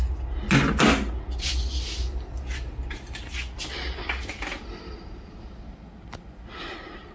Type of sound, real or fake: real